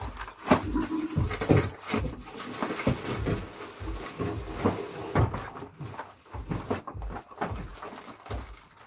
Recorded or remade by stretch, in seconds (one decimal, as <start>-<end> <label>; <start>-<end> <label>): 0.0-8.9 recorded